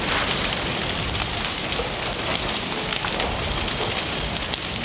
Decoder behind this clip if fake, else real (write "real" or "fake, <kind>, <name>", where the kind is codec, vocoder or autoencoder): real